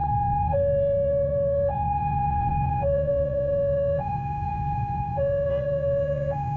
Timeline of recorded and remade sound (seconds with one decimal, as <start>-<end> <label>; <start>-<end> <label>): 0.0-6.6 remade